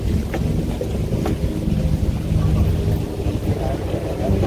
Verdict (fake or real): real